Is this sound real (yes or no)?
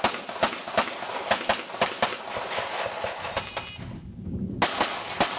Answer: yes